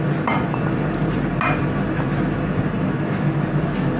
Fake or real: real